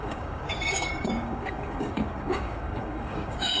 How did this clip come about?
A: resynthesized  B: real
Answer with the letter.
A